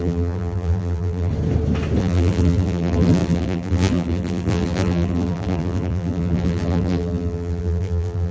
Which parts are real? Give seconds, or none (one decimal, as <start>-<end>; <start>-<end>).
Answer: 1.3-2.0